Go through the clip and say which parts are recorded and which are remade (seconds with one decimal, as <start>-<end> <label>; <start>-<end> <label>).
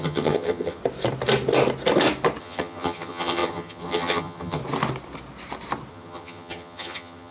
0.0-0.8 remade; 0.8-2.4 recorded; 2.4-4.6 remade; 4.6-5.9 recorded; 5.9-7.3 remade